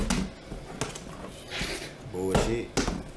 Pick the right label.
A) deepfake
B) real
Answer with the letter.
B